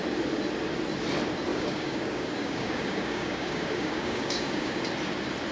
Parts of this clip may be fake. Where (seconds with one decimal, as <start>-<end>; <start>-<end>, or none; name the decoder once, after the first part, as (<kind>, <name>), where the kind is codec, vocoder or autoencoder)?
1.5-4.8 (codec, DAC)